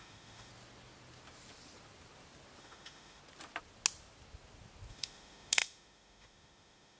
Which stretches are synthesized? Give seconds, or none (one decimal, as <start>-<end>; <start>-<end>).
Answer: 0.0-0.5; 2.6-3.2; 4.9-7.0

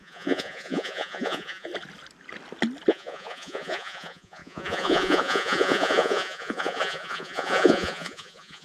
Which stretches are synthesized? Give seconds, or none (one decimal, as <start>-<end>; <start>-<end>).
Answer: 0.0-1.7; 2.9-8.6